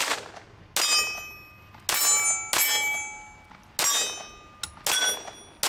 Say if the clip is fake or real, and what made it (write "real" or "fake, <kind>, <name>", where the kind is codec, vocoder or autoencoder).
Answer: real